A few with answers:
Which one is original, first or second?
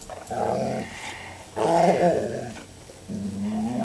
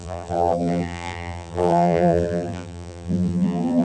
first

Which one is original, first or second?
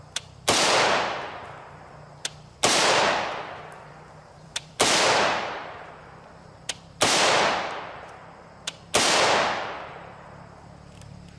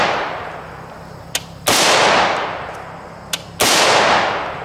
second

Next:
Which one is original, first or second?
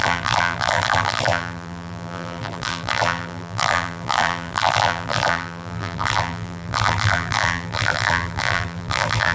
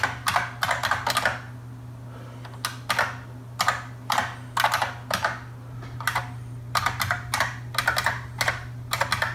second